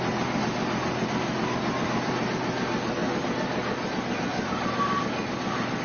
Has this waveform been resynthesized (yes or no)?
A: no